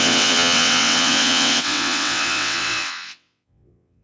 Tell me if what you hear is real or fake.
fake